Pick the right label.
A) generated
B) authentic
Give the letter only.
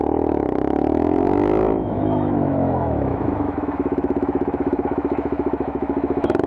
A